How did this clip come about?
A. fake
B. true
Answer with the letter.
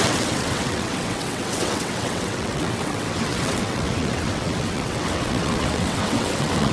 A